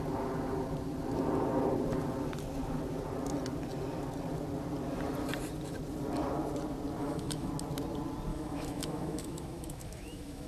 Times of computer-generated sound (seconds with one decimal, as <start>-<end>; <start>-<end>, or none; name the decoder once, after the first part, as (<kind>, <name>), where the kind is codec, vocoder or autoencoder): 7.0-7.5 (autoencoder, DAC-VAE); 8.3-10.5